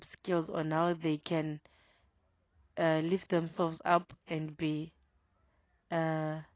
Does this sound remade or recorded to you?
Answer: recorded